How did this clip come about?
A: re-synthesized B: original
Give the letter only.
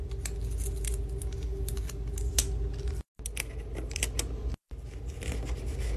B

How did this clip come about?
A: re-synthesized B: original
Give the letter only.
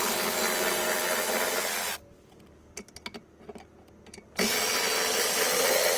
B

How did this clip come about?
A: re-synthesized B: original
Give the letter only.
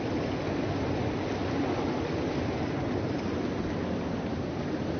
B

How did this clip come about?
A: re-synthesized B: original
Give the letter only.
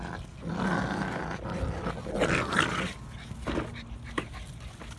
B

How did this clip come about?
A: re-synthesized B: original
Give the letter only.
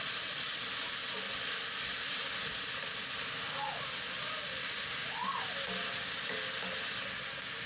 B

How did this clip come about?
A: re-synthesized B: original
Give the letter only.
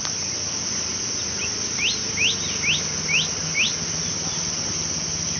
B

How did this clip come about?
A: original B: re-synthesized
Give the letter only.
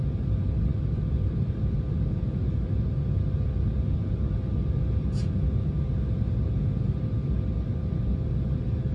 A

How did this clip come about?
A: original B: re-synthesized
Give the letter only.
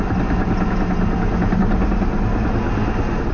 A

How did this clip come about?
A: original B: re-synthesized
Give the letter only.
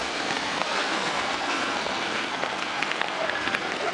B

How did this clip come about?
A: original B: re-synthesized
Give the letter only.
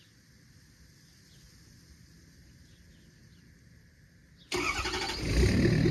A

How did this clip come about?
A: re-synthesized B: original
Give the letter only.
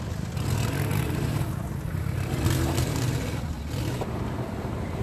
B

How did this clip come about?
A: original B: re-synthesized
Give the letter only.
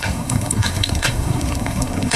B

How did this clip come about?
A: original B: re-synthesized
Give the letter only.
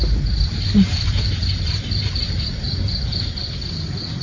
A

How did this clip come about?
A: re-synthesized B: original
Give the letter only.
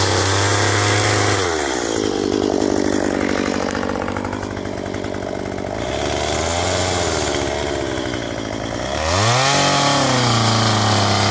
B